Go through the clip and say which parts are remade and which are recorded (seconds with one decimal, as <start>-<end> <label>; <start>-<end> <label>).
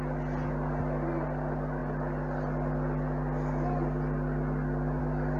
0.0-5.4 recorded